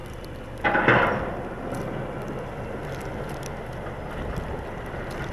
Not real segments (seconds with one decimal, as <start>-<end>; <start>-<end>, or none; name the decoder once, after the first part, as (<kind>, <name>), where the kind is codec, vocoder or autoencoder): none